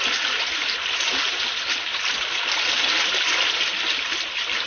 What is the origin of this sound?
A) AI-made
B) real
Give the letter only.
B